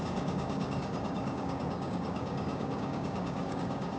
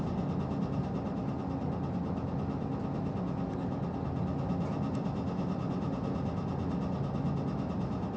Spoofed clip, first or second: first